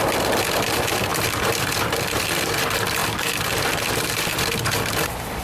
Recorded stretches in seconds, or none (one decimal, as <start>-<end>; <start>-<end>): none